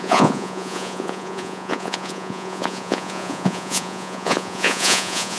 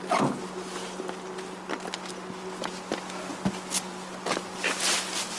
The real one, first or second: second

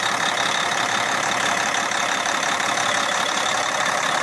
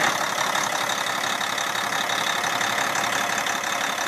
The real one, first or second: second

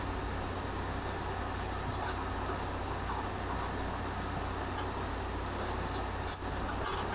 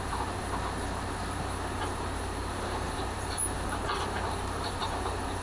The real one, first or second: first